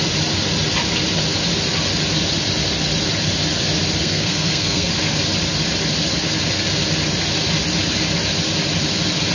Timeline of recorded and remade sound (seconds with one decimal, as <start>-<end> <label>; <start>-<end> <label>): 0.0-4.0 recorded; 4.0-4.9 remade; 4.9-9.3 recorded

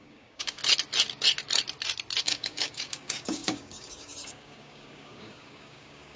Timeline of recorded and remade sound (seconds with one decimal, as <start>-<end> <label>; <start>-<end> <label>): 0.0-0.6 remade; 0.6-2.2 recorded; 2.2-6.2 remade

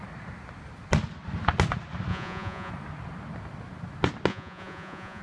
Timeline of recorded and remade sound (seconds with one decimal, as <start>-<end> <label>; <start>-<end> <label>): 0.0-2.1 recorded; 2.1-2.7 remade; 2.7-4.3 recorded; 4.3-5.2 remade

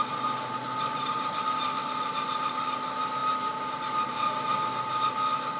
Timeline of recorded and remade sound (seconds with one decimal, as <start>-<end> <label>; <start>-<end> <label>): 0.0-5.6 recorded

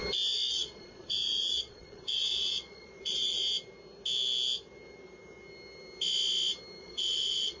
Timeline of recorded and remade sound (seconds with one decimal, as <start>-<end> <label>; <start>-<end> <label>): 0.0-0.5 recorded; 0.5-3.4 remade; 3.4-6.8 recorded; 6.8-7.6 remade